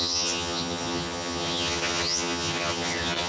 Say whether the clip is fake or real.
fake